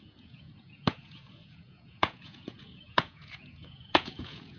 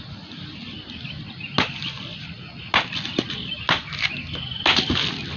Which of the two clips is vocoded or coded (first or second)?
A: first